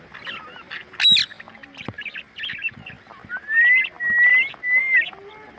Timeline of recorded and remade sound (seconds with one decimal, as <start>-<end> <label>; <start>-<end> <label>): 0.0-5.6 recorded